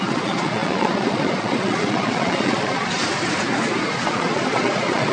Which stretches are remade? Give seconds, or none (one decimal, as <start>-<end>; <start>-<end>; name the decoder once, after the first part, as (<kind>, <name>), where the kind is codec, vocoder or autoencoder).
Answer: 0.0-3.0 (vocoder, Vocos); 4.1-5.1